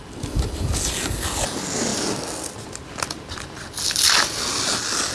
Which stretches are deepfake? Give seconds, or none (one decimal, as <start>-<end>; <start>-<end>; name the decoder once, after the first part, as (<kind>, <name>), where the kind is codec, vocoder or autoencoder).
none